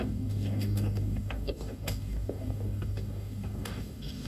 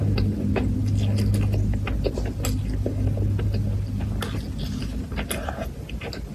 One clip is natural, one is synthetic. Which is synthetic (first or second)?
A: first